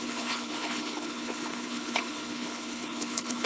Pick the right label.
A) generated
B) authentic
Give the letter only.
A